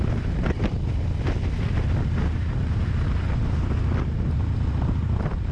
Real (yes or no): yes